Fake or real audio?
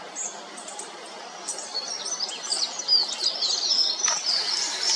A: real